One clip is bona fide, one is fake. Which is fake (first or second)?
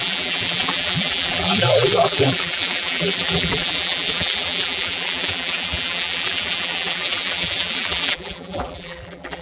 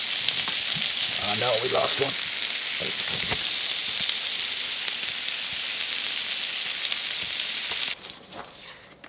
first